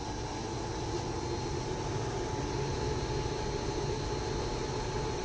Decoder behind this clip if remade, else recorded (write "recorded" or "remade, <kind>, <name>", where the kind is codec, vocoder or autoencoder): recorded